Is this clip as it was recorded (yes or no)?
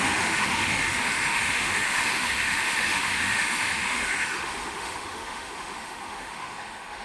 no